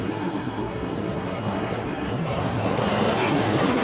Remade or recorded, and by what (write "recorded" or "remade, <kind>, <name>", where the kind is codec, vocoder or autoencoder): remade, codec, SNAC